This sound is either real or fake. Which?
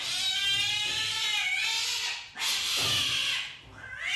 real